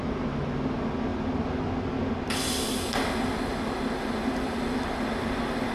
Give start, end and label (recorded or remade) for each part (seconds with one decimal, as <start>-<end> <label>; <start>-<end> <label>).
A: 0.0-5.7 recorded